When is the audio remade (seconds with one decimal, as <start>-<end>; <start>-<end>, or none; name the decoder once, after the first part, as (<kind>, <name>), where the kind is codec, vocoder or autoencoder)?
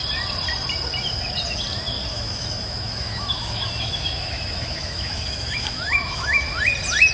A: 2.1-6.4 (autoencoder, DAC-VAE)